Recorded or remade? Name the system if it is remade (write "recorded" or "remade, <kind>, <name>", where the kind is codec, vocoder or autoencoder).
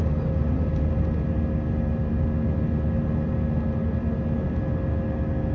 recorded